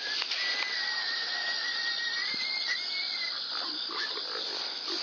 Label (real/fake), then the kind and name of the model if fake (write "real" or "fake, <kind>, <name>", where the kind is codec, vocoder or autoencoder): real